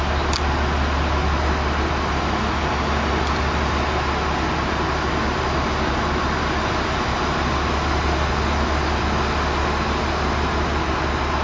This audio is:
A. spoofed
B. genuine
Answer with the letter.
B